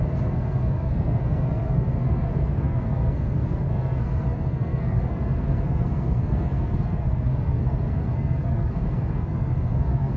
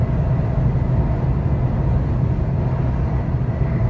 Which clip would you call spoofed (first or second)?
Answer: first